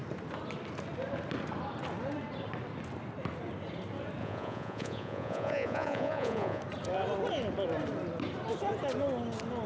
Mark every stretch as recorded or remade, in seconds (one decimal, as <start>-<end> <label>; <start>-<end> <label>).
0.0-4.2 recorded; 4.2-6.6 remade; 6.6-9.7 recorded